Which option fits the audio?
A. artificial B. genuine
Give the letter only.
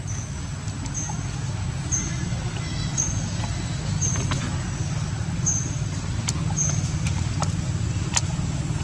B